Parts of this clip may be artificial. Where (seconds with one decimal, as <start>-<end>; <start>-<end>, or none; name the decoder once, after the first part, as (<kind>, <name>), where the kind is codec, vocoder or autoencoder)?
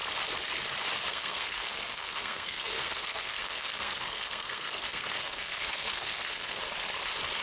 1.1-6.6 (codec, SNAC)